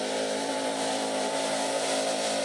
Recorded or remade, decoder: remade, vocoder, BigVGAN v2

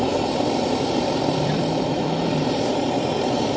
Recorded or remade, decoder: remade, vocoder, BigVGAN v2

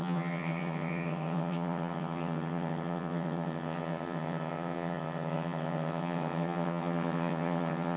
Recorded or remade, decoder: remade, vocoder, HiFi-GAN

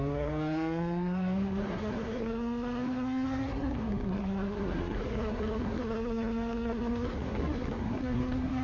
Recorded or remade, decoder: remade, codec, SNAC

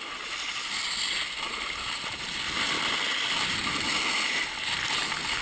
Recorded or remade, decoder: recorded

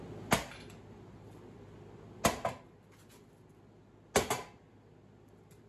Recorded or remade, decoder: recorded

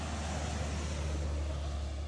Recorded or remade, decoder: recorded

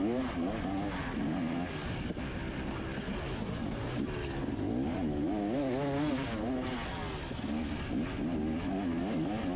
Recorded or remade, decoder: recorded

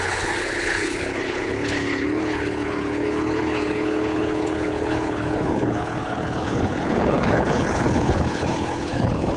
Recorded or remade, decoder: remade, codec, HILCodec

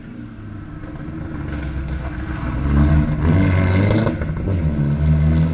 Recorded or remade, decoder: recorded